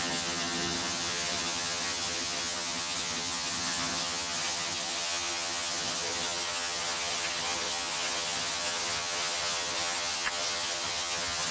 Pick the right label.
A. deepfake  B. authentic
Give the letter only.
A